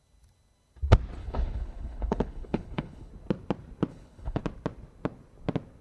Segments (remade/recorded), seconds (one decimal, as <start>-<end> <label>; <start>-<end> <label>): 0.0-1.2 recorded; 1.2-3.1 remade; 3.1-3.9 recorded; 3.9-4.4 remade; 4.4-5.8 recorded